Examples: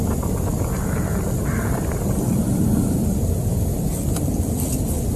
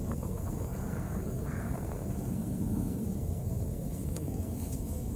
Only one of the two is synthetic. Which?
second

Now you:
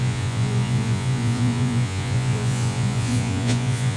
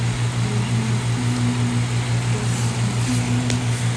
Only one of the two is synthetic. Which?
first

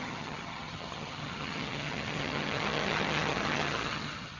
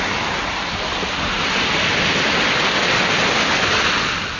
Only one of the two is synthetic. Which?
first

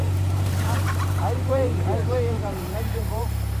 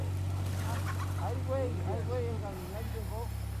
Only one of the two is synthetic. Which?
first